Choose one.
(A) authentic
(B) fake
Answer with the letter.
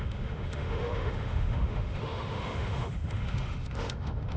B